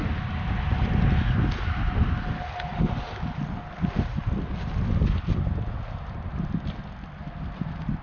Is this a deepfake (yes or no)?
no